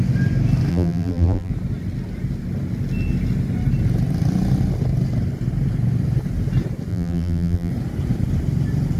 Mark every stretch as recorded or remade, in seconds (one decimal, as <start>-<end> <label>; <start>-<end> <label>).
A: 0.0-0.7 recorded; 0.7-1.5 remade; 1.5-6.9 recorded; 6.9-7.7 remade; 7.7-9.0 recorded